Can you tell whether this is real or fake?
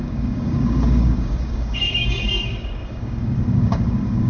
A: fake